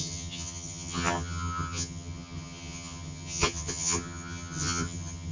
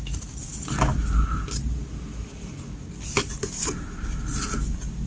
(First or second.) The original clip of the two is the second